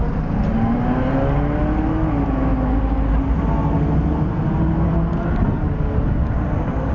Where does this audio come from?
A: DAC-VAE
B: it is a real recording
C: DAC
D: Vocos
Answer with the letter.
B